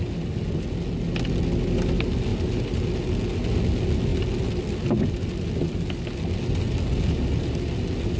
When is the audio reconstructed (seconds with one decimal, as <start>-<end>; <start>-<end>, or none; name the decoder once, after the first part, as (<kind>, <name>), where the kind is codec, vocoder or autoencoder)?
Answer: none